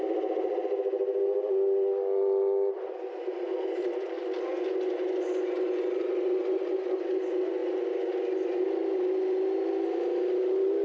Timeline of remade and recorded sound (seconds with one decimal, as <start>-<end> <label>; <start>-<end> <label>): 0.0-10.8 recorded